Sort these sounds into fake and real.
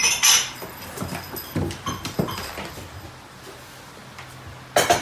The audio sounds real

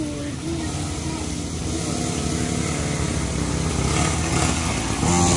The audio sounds real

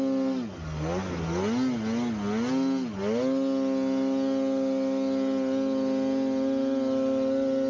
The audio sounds real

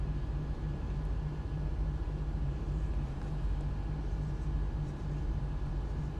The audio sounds fake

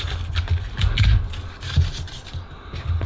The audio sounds real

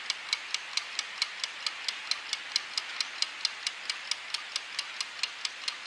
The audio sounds real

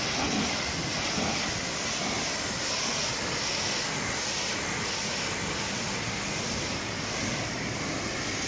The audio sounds real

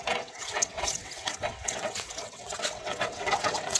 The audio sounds fake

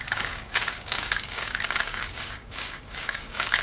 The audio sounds fake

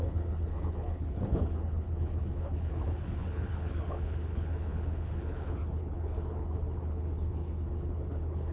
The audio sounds fake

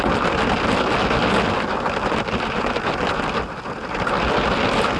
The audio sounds real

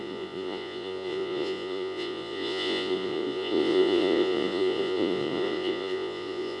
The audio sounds fake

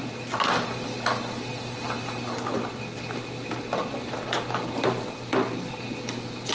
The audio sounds real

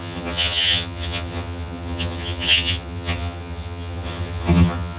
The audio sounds fake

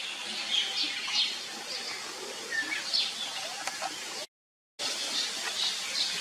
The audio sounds real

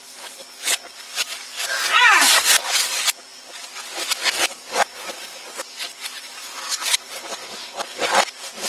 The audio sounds fake